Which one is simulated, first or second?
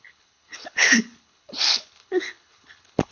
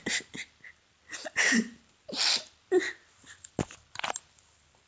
first